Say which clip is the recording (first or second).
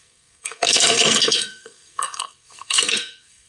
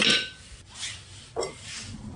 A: second